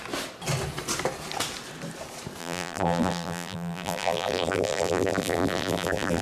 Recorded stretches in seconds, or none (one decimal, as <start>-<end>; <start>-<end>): 0.0-2.4